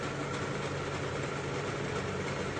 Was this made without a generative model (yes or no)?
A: yes